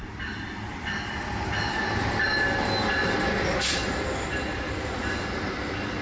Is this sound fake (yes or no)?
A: no